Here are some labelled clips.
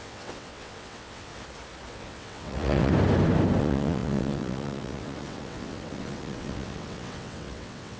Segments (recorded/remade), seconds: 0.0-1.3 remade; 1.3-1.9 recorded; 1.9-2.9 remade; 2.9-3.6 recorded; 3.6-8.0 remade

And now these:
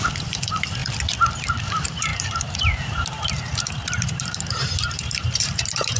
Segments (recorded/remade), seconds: 0.0-0.8 remade; 0.8-1.5 recorded; 1.5-6.0 remade

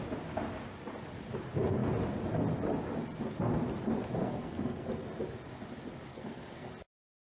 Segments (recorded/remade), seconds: 0.0-4.2 recorded; 4.2-4.9 remade; 4.9-6.1 recorded; 6.1-6.7 remade; 6.7-7.2 recorded